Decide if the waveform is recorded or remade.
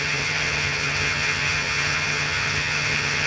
remade